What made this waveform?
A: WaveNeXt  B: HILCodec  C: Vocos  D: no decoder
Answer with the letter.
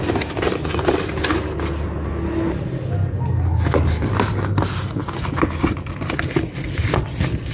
D